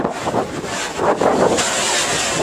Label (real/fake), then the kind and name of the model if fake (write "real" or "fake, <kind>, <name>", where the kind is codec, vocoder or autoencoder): real